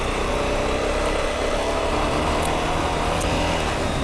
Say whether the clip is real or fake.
real